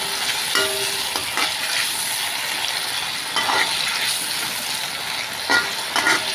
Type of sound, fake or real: real